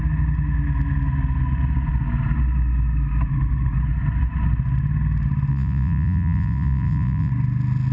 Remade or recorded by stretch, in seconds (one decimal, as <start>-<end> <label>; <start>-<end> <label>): 0.0-5.5 recorded; 5.5-7.3 remade; 7.3-7.9 recorded